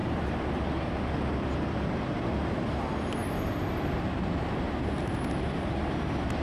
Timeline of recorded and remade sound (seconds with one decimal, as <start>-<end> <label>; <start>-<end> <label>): 0.0-0.7 remade; 0.7-3.2 recorded; 3.2-4.3 remade; 4.3-6.4 recorded